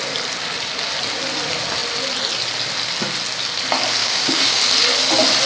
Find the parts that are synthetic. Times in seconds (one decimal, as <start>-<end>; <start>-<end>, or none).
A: 4.0-4.6